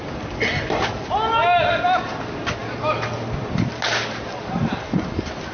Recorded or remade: recorded